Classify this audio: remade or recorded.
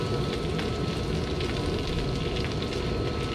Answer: recorded